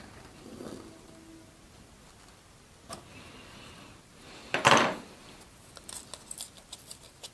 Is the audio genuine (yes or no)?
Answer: yes